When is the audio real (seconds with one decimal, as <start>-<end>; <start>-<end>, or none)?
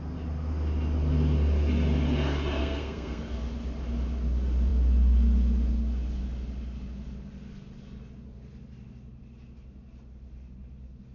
0.0-2.6; 3.2-11.1